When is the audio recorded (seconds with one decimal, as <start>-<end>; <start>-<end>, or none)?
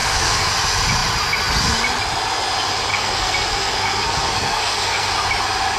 0.5-2.9; 5.1-5.8